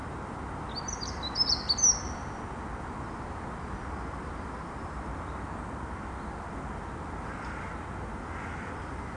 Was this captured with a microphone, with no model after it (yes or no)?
yes